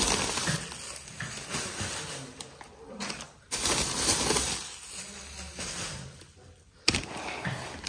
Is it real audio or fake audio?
real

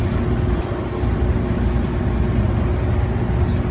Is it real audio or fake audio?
real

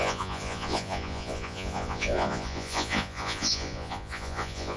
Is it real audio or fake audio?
fake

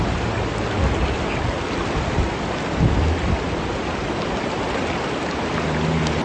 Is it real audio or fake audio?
real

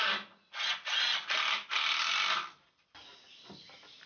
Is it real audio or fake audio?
real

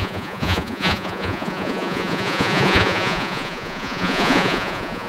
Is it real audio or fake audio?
fake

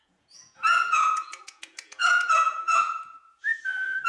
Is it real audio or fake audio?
fake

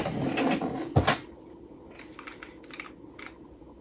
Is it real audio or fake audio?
real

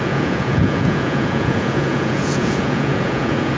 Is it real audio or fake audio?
fake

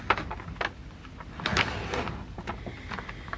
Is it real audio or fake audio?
real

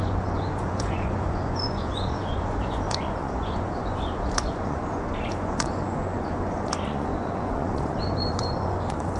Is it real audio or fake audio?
fake